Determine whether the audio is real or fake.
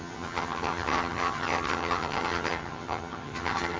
fake